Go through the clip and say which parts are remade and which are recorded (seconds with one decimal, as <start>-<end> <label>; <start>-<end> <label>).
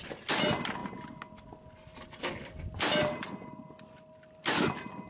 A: 0.0-5.1 recorded